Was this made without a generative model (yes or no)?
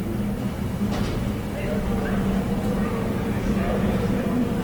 yes